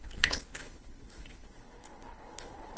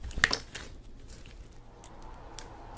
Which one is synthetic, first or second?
first